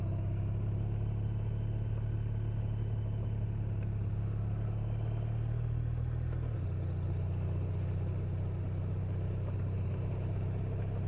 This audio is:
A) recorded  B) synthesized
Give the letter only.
A